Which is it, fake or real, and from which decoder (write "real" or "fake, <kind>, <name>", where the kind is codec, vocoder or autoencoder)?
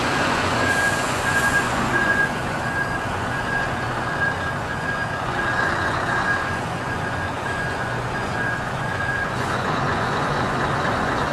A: fake, vocoder, Vocos